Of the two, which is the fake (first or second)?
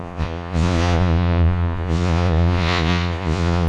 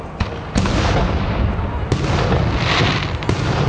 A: first